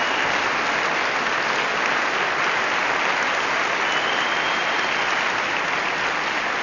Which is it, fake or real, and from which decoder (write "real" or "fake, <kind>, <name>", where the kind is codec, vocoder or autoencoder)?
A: real